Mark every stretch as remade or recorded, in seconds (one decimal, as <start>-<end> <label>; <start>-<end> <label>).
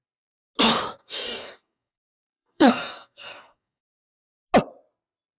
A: 0.0-1.0 recorded; 1.0-4.2 remade; 4.2-5.4 recorded